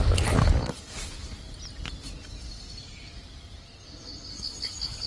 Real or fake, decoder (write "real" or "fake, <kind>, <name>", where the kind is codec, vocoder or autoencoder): real